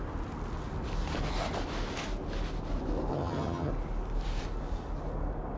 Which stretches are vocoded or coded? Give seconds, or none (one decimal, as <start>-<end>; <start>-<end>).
3.1-3.7